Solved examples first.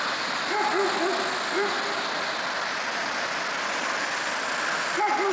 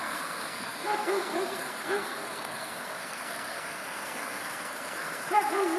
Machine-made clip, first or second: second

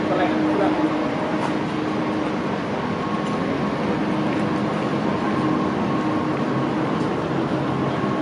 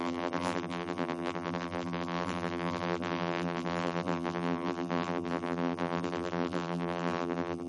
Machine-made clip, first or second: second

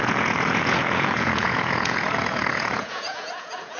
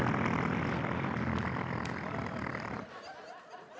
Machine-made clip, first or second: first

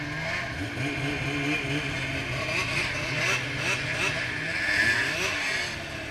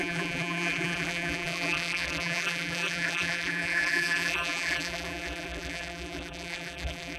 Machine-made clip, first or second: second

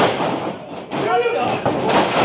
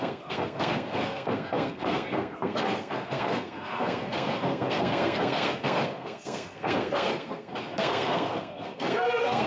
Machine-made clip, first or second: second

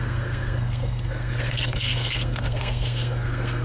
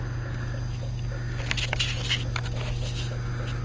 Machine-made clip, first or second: first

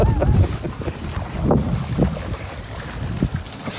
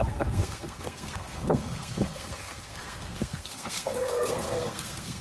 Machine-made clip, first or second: second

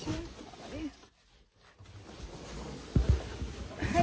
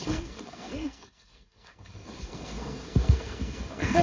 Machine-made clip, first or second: second